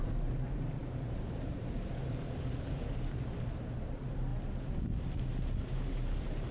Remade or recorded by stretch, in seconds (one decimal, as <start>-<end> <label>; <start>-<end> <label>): 0.0-4.3 remade; 4.3-5.6 recorded; 5.6-6.5 remade